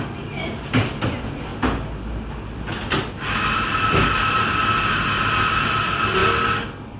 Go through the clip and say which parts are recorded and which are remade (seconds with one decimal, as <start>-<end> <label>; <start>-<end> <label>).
0.0-7.0 recorded